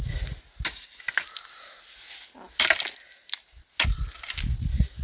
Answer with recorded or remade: recorded